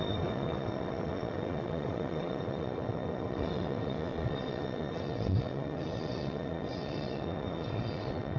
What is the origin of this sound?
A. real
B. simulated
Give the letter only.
B